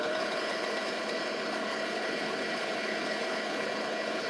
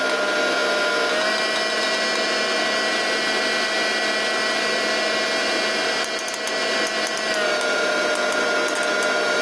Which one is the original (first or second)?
second